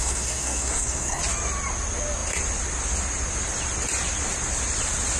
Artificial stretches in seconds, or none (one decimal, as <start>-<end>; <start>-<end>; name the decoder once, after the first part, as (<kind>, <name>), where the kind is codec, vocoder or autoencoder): 0.0-1.2 (codec, SNAC)